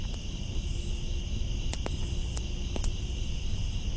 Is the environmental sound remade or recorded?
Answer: recorded